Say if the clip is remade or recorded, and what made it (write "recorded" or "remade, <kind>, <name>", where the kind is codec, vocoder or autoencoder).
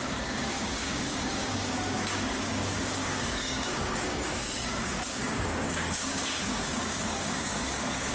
remade, codec, DAC